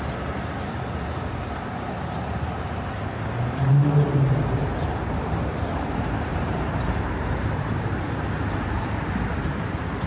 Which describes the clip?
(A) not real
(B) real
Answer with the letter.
A